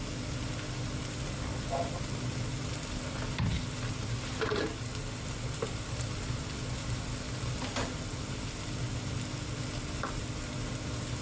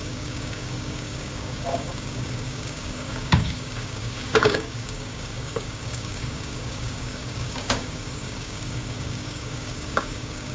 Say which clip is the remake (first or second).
second